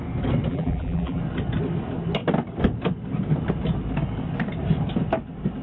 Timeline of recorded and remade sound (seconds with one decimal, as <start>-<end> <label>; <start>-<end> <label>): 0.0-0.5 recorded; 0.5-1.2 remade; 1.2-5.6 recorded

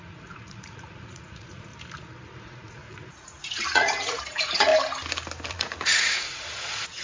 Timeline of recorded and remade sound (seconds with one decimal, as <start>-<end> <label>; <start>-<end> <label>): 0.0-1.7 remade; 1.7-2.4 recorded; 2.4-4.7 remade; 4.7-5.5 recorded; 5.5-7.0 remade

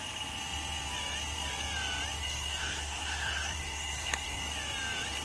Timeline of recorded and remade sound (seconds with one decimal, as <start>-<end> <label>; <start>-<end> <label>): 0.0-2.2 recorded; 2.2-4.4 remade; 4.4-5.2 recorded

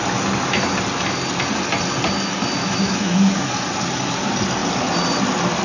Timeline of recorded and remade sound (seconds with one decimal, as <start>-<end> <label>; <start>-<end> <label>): 0.0-2.6 recorded; 2.6-3.5 remade; 3.5-5.6 recorded

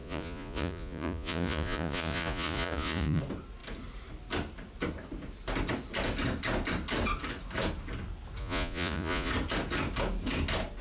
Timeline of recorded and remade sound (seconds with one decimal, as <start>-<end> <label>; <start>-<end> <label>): 0.0-3.2 remade; 3.2-8.4 recorded; 8.4-9.3 remade; 9.3-10.8 recorded

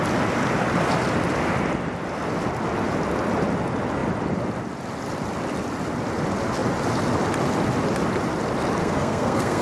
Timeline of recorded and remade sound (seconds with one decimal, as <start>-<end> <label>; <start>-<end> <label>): 0.0-8.8 recorded; 8.8-9.6 remade

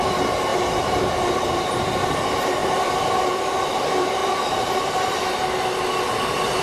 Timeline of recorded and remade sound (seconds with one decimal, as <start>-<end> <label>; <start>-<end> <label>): 0.0-6.6 recorded

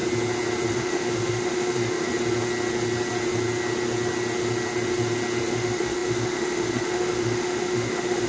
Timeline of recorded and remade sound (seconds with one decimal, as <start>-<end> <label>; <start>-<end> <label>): 0.0-0.7 recorded; 0.7-2.1 remade; 2.1-5.5 recorded; 5.5-8.3 remade